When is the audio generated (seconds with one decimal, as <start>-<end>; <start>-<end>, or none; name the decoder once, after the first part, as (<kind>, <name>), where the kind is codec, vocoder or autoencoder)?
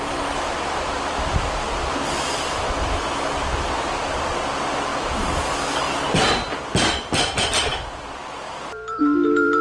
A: 0.0-4.9 (vocoder, BigVGAN v2); 6.3-9.6